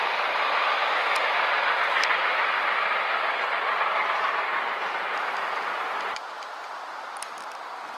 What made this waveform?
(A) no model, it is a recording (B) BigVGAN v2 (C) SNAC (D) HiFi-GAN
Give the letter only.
A